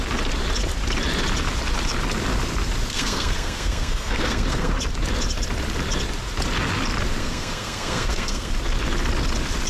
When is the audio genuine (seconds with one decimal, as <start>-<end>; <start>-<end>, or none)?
0.0-2.9; 4.7-7.2; 8.5-9.7